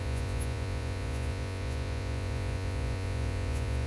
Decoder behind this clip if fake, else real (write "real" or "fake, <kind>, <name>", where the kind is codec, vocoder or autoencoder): fake, vocoder, Vocos